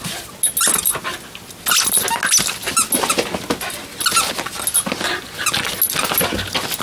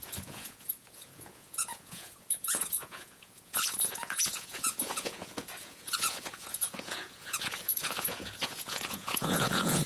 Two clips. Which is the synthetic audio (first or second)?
second